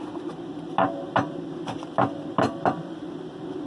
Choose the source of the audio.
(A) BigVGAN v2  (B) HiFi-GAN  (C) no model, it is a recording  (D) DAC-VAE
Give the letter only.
C